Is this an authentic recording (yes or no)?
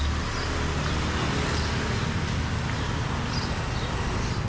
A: yes